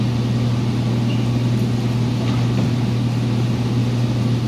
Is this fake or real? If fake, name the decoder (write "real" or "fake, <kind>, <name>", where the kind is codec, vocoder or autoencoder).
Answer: real